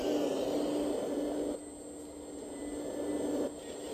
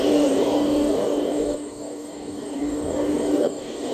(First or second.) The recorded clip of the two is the first